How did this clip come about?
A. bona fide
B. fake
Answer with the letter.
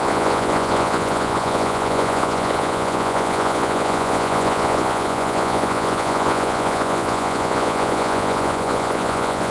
B